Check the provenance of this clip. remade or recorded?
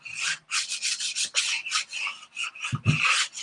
recorded